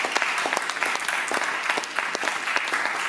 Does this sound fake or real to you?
real